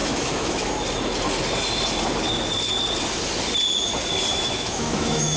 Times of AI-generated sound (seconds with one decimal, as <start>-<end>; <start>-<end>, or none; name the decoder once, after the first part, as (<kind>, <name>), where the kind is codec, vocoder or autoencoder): 0.0-0.7 (autoencoder, DAC-VAE); 4.3-5.4